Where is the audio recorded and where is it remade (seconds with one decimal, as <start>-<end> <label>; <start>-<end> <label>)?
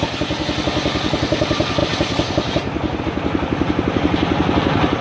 0.0-1.8 recorded; 1.8-3.0 remade; 3.0-5.0 recorded